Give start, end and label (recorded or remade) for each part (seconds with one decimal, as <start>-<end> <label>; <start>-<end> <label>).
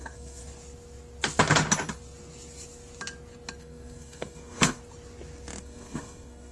0.0-0.4 remade; 0.4-3.6 recorded; 3.6-4.8 remade; 4.8-5.6 recorded; 5.6-6.5 remade